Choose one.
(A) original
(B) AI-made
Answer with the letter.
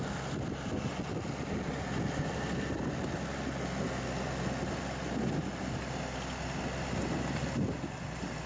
A